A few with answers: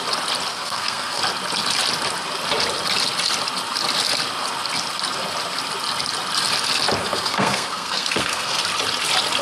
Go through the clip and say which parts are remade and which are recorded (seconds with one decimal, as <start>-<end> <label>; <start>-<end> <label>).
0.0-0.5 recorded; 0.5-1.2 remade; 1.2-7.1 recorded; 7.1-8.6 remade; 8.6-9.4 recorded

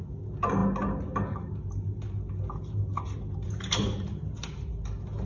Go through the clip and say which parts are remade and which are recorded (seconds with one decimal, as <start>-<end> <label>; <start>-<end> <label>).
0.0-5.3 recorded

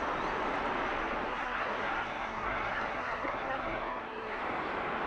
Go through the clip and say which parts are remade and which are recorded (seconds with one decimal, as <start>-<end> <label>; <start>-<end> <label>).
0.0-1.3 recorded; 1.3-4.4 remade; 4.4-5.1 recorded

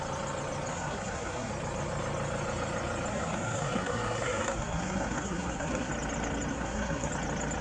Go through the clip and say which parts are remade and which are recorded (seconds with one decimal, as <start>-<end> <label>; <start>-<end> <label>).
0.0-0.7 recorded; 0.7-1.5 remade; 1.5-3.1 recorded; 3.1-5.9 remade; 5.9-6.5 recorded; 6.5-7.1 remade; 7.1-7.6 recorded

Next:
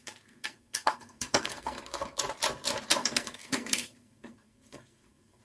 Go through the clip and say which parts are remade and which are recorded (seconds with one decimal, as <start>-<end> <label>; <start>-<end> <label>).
0.0-2.2 remade; 2.2-3.0 recorded; 3.0-5.4 remade

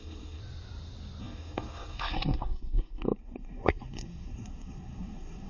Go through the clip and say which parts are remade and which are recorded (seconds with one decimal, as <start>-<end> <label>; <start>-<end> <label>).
0.0-0.4 remade; 0.4-1.2 recorded; 1.2-5.5 remade